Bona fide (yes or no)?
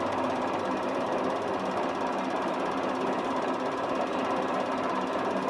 yes